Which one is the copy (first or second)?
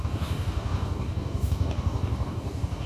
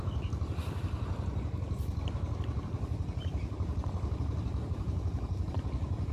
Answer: first